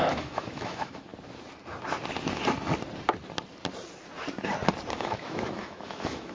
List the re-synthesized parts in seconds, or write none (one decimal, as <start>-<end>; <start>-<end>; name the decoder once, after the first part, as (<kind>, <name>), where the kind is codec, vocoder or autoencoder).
0.0-1.1 (autoencoder, DAC-VAE); 4.9-6.3